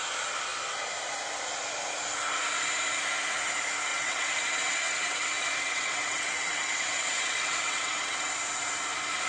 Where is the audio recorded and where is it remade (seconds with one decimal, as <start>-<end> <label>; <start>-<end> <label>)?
0.0-3.9 recorded; 3.9-8.3 remade; 8.3-9.3 recorded

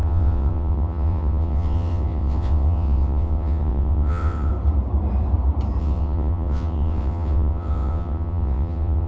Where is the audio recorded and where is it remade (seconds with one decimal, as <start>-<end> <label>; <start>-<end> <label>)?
0.0-4.5 remade; 4.5-5.8 recorded; 5.8-9.1 remade

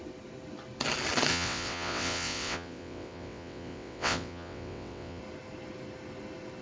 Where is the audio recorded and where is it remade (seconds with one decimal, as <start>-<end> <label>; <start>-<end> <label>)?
0.0-1.3 recorded; 1.3-5.2 remade; 5.2-6.6 recorded

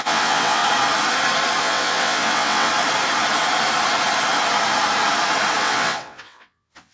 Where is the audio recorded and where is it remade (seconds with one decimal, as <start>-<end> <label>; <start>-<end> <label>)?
0.0-0.6 remade; 0.6-1.6 recorded; 1.6-2.7 remade; 2.7-5.6 recorded; 5.6-6.9 remade

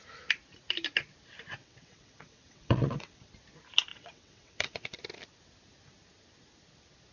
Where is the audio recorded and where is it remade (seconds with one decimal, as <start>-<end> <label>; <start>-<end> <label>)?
0.0-1.6 recorded; 1.6-3.3 remade; 3.3-3.9 recorded; 3.9-5.0 remade; 5.0-7.1 recorded

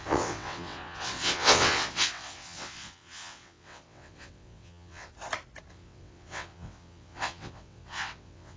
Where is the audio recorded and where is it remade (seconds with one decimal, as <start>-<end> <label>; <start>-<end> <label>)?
0.0-5.1 remade; 5.1-5.7 recorded; 5.7-8.6 remade